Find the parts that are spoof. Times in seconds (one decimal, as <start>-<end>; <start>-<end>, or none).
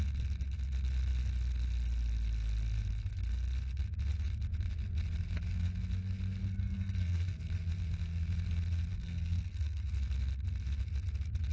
6.4-7.3; 8.9-9.9